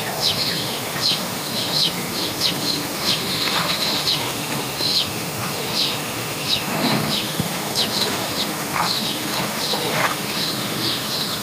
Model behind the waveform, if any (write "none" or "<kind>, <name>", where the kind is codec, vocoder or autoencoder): autoencoder, DAC-VAE